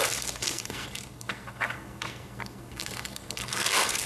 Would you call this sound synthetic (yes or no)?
yes